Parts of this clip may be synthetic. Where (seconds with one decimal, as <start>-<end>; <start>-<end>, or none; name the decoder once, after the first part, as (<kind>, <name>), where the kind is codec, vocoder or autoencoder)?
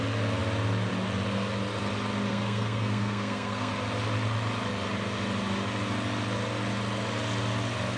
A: 2.3-3.7 (codec, SNAC)